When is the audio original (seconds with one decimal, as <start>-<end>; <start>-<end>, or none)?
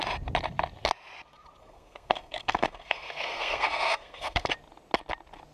0.0-1.6; 4.5-5.5